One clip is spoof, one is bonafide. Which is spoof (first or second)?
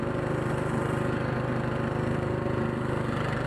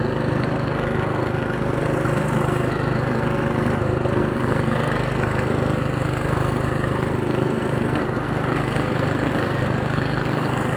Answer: second